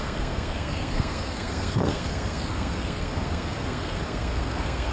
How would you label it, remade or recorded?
remade